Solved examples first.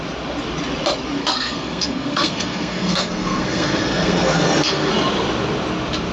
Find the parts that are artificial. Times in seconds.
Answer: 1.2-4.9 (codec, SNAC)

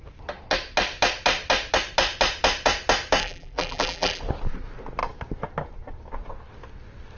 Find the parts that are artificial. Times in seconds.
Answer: 3.2-4.2 (vocoder, BigVGAN v2)

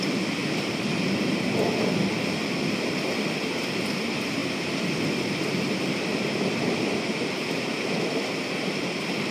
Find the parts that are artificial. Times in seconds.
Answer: 0.0-0.4 (vocoder, BigVGAN v2); 2.9-4.4; 5.0-9.3

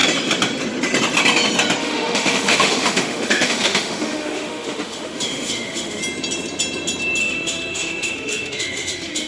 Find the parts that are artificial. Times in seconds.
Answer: 1.8-6.0 (autoencoder, DAC-VAE); 7.2-9.3